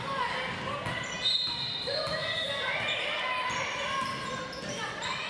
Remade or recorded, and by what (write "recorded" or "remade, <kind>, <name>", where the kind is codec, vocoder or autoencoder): recorded